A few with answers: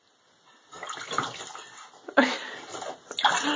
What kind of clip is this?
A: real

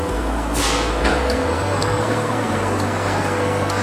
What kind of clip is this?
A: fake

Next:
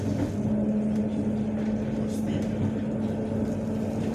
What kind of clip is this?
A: real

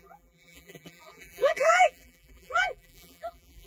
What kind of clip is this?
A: fake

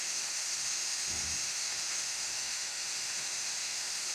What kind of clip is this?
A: fake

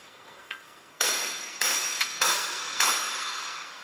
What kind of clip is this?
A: fake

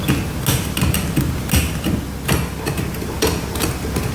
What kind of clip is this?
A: real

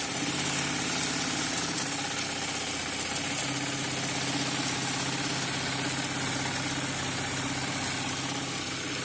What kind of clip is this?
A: real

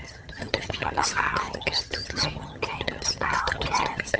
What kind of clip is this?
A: fake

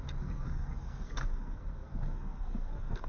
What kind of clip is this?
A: fake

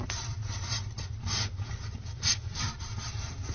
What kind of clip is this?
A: real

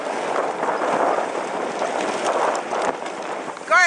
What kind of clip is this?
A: fake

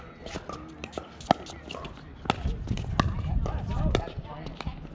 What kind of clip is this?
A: real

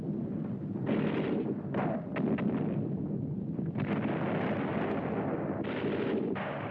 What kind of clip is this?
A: fake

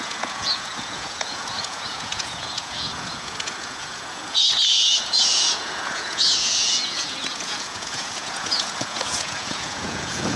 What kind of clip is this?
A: fake